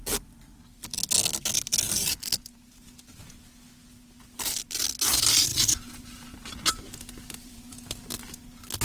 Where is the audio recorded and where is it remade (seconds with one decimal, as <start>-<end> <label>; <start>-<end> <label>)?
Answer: 0.0-1.7 recorded; 1.7-2.9 remade; 2.9-5.5 recorded; 5.5-8.1 remade; 8.1-8.8 recorded